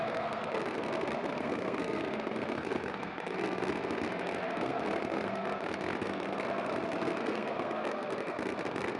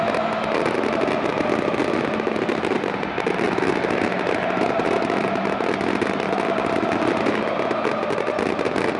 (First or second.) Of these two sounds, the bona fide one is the second